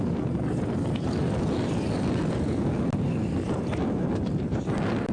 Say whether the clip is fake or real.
real